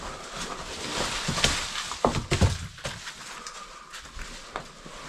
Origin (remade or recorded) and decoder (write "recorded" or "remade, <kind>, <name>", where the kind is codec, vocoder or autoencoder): recorded